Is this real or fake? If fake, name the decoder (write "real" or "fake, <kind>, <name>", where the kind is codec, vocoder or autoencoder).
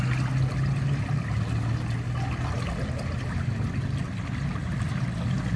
real